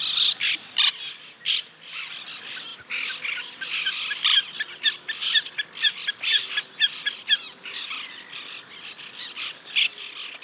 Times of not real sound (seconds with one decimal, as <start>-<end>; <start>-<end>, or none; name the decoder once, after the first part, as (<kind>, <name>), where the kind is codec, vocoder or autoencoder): none